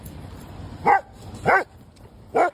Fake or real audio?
real